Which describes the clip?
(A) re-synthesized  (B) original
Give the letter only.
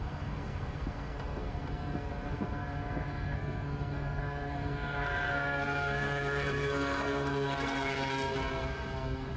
A